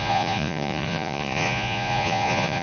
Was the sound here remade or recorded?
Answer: remade